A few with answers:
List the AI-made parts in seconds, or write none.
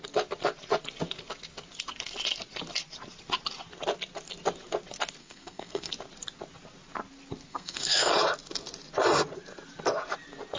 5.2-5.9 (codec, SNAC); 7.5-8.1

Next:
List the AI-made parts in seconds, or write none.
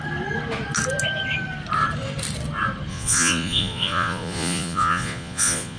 2.9-5.8 (vocoder, Vocos)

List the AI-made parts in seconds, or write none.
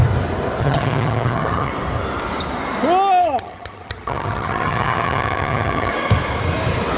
0.6-1.7 (vocoder, HiFi-GAN); 3.2-5.9